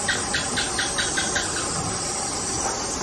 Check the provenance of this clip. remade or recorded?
recorded